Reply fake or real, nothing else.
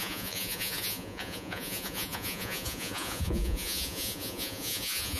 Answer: fake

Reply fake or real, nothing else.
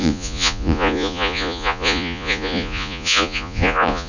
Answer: fake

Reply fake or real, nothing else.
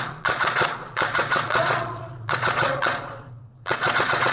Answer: fake